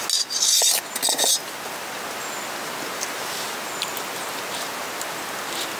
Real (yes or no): yes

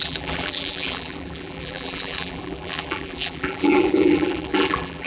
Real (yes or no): no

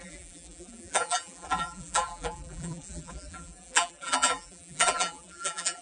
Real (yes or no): no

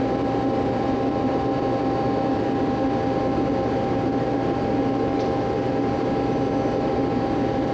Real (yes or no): no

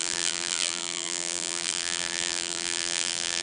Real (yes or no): no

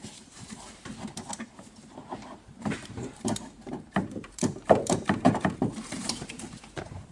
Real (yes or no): no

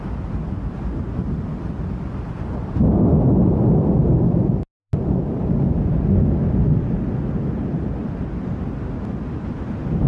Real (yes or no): yes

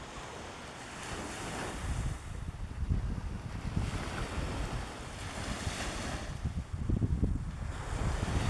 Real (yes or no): yes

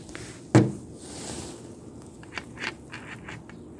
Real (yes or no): yes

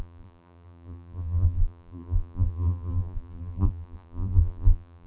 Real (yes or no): no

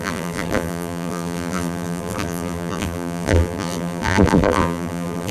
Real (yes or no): no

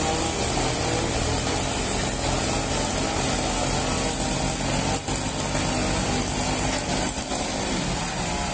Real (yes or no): yes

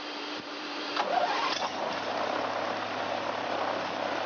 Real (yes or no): no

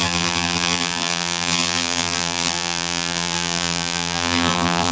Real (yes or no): no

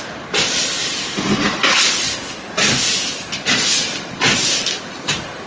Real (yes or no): yes